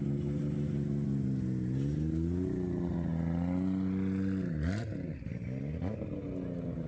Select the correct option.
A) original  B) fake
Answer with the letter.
A